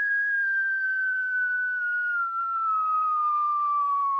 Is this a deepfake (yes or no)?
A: yes